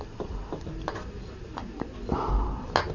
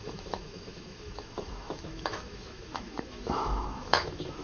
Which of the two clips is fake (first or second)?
second